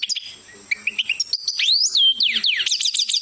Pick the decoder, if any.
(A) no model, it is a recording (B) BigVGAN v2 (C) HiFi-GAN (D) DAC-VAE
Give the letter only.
A